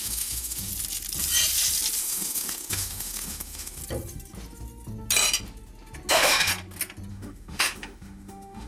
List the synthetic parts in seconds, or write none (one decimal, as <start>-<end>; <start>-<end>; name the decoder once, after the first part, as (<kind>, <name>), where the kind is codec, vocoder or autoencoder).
0.0-0.7 (autoencoder, DAC-VAE); 2.0-3.8; 6.1-6.5; 7.1-8.7